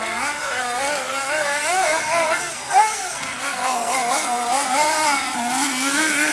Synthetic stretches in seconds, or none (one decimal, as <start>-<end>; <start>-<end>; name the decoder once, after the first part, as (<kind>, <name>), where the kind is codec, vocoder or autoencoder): 0.0-6.3 (codec, SNAC)